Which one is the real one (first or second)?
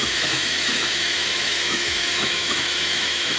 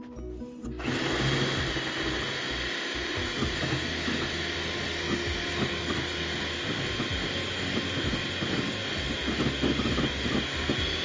second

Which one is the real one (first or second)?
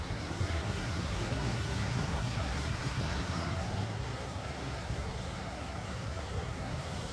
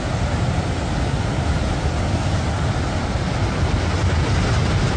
second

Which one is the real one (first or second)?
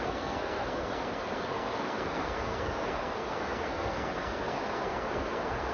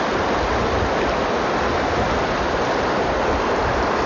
second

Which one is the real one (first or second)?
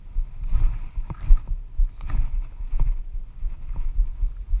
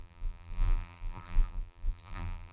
first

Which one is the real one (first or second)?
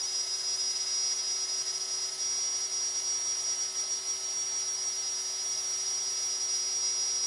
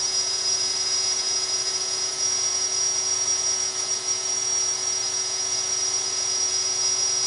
first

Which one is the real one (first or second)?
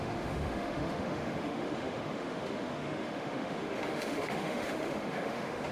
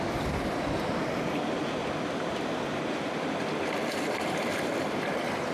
second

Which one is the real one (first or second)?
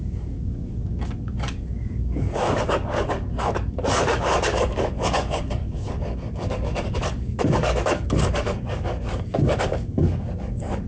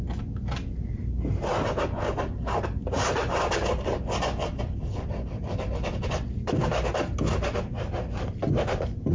second